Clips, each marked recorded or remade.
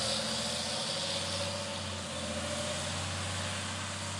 recorded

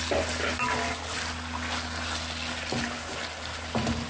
recorded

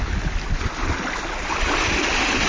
recorded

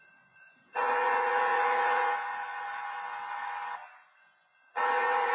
remade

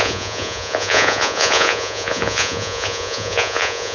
remade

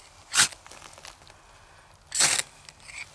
recorded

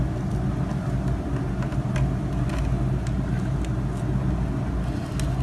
recorded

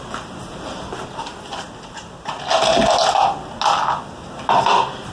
recorded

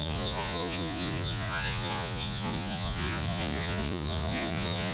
remade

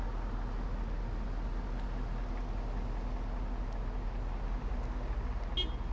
recorded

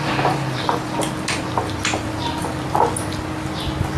recorded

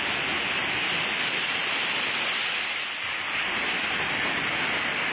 recorded